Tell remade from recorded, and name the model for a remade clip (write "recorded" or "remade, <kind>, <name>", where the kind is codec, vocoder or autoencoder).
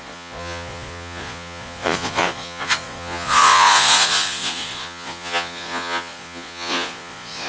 remade, vocoder, Vocos